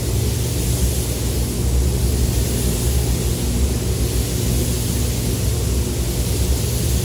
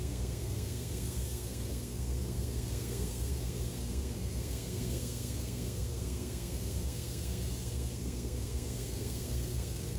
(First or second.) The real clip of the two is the first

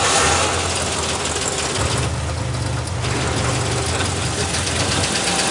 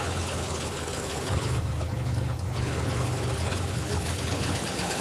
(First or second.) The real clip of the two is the first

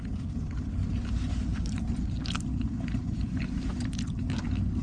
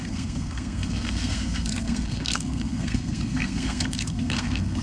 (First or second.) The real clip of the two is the first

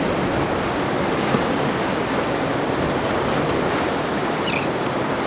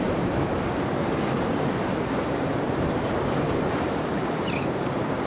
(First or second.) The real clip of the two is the first